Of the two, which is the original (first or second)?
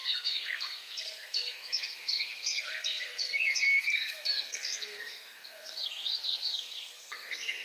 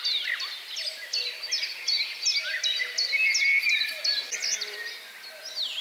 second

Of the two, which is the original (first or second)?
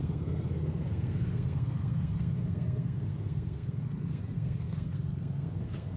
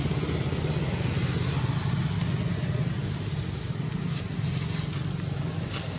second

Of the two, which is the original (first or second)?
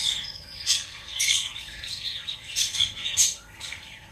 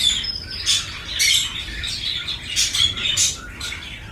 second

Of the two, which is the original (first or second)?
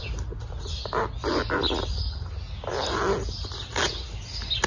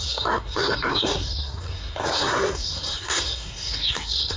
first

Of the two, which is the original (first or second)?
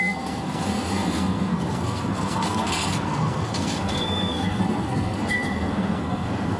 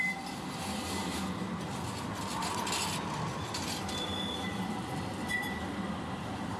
second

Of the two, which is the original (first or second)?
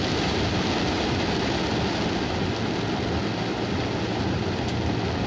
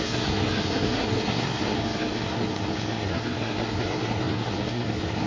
first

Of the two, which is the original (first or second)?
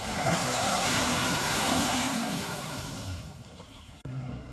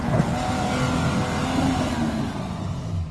second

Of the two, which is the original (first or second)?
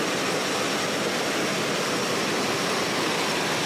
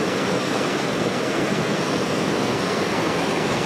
first